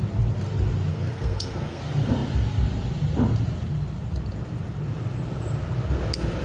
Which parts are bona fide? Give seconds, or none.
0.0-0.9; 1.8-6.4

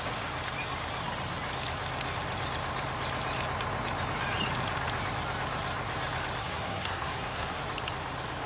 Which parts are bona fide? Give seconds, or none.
0.0-6.4; 7.6-8.5

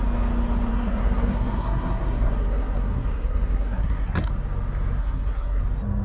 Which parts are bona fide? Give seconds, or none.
0.0-0.7; 4.3-5.0; 5.6-6.0

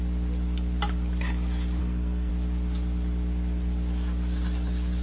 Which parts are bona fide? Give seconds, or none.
0.0-1.8; 2.3-5.0